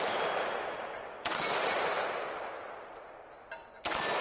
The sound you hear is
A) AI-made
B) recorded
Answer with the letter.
B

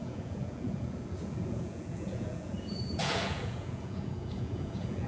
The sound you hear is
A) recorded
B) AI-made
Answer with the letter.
B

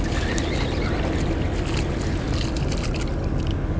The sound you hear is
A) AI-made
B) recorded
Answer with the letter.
B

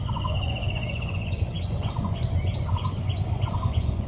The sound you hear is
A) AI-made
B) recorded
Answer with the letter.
A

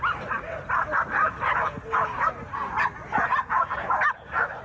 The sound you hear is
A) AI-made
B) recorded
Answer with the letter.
B